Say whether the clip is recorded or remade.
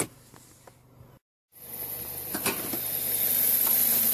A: recorded